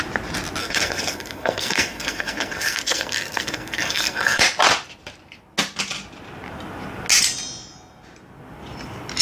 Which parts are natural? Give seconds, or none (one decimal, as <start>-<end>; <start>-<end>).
0.0-0.6; 4.4-9.2